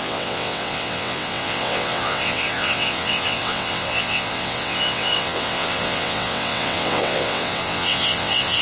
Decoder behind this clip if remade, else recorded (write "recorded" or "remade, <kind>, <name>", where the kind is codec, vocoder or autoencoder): remade, vocoder, WaveNeXt